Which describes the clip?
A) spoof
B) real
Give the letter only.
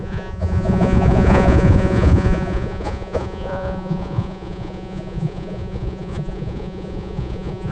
A